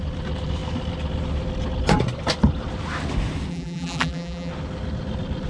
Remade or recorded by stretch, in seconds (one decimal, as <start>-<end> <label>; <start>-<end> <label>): 0.0-3.5 recorded; 3.5-4.5 remade; 4.5-5.5 recorded